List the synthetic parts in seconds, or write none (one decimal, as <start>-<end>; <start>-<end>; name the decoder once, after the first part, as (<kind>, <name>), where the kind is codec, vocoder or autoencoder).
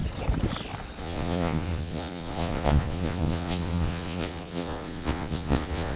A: 1.0-6.0 (vocoder, Vocos)